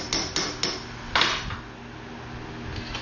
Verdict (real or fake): real